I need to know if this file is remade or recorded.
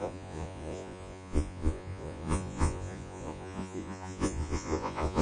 remade